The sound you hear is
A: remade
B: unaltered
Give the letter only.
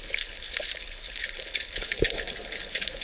A